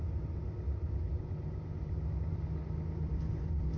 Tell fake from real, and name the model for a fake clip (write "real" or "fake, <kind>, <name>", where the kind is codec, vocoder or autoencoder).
real